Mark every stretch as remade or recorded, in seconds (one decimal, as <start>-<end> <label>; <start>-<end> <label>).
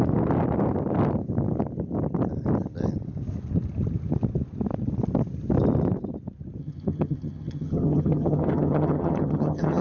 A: 0.0-6.6 recorded; 6.6-9.8 remade